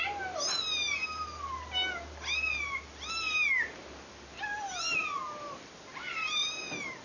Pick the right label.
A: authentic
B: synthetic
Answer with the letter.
A